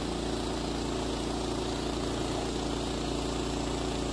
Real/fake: real